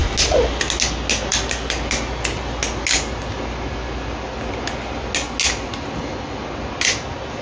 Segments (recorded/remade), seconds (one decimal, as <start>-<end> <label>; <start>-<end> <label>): 0.0-7.4 recorded